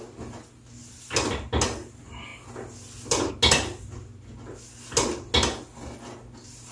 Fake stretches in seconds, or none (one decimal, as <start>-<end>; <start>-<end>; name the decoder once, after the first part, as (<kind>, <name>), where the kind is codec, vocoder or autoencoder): none

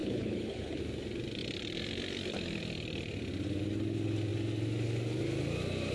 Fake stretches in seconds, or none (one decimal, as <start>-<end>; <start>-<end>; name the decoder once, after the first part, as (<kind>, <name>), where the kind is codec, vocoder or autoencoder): 0.0-0.8 (codec, HILCodec)

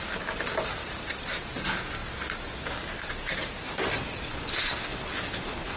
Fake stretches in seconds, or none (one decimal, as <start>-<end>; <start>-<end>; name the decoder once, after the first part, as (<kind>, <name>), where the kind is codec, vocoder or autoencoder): 4.3-5.8 (codec, HILCodec)

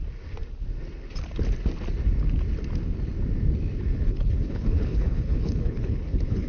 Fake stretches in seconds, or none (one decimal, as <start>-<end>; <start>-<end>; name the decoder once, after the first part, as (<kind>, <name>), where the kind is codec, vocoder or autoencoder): 4.0-6.5 (codec, HILCodec)

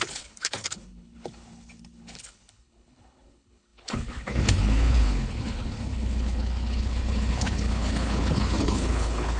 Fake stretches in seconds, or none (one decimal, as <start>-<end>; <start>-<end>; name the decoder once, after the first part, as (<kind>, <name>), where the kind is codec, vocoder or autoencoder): 0.0-9.4 (codec, HILCodec)

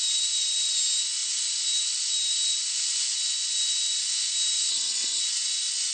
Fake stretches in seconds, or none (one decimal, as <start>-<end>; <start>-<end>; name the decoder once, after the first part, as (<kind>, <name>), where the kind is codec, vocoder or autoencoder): 4.7-5.2 (codec, HILCodec)

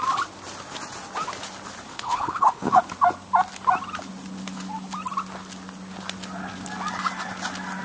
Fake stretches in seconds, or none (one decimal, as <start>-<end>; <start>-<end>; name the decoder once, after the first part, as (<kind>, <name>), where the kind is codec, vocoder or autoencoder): 1.9-2.8 (codec, HILCodec)